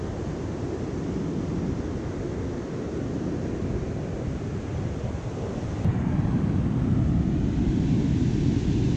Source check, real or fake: real